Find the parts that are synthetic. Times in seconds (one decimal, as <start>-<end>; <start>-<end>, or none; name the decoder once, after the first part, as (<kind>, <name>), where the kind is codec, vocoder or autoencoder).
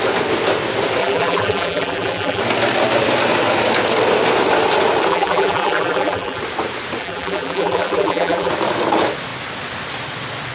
1.0-2.4 (vocoder, BigVGAN v2); 5.1-6.4; 7.0-8.5